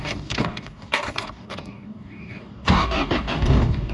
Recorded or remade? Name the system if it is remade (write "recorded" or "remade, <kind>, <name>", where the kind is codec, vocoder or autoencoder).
remade, codec, DAC